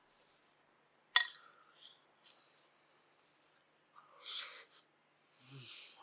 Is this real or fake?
real